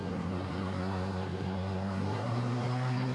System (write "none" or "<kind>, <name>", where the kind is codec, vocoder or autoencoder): codec, SNAC